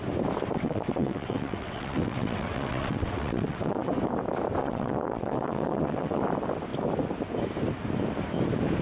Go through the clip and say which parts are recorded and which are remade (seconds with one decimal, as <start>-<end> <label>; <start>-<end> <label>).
0.0-0.5 recorded; 0.5-3.9 remade; 3.9-4.6 recorded; 4.6-6.2 remade; 6.2-8.8 recorded